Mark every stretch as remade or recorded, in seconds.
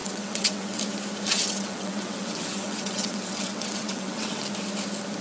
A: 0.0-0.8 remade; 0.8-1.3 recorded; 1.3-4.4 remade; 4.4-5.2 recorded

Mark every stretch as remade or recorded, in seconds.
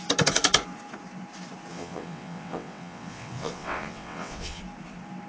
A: 0.0-1.7 recorded; 1.7-4.6 remade; 4.6-5.3 recorded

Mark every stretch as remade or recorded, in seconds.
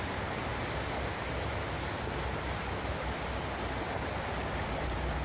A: 0.0-5.2 recorded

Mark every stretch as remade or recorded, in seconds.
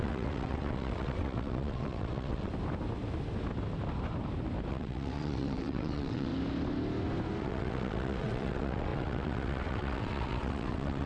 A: 0.0-2.5 remade; 2.5-4.7 recorded; 4.7-6.3 remade; 6.3-7.4 recorded; 7.4-11.1 remade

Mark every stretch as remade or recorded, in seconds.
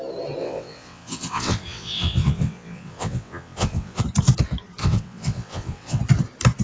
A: 0.0-0.4 recorded; 0.4-4.0 remade; 4.0-4.8 recorded; 4.8-6.0 remade; 6.0-6.6 recorded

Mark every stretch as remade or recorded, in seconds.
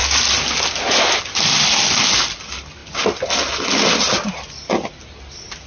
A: 0.0-5.7 recorded